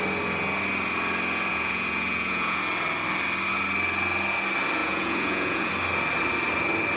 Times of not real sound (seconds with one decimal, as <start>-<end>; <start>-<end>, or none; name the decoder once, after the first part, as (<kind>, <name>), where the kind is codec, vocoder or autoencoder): 1.5-2.6 (vocoder, Vocos); 4.8-5.7